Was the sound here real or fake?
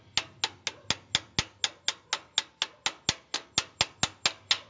real